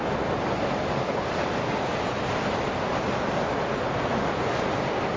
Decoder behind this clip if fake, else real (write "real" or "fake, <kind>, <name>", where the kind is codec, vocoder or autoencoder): real